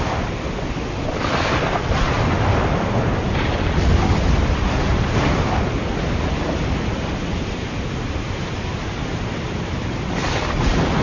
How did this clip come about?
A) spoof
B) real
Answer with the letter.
B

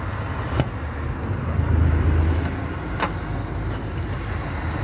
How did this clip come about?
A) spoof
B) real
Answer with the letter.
B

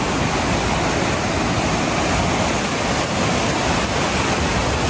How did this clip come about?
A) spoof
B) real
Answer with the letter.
B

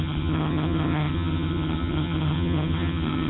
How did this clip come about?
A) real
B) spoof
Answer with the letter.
B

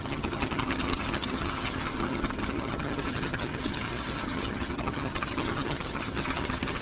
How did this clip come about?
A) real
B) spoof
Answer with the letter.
B